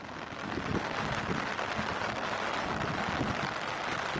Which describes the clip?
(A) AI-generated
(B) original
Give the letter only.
B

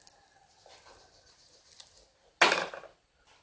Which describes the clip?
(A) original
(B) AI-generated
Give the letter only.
A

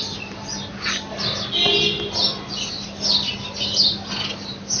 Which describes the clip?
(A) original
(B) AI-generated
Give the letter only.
A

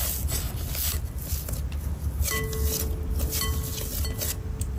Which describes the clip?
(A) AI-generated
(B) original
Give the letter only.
B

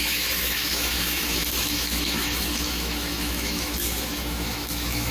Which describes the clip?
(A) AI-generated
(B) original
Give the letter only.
A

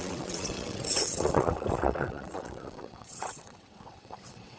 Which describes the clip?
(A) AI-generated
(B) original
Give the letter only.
A